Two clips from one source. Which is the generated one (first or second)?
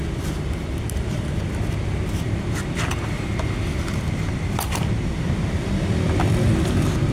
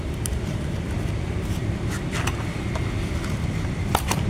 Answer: second